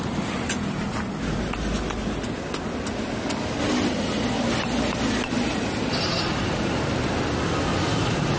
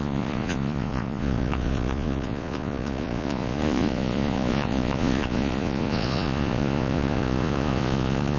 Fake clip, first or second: second